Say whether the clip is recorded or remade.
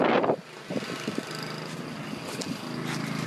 recorded